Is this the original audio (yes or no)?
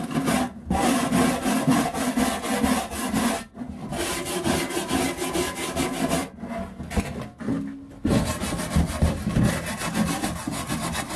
yes